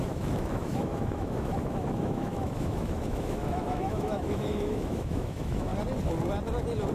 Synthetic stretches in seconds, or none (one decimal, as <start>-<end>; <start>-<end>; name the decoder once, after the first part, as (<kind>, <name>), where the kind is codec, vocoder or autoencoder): 0.0-5.7 (autoencoder, DAC-VAE)